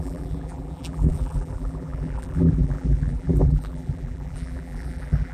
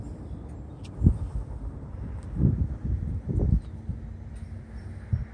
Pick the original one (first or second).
second